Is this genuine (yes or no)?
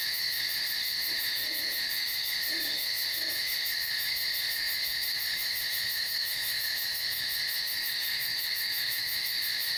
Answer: no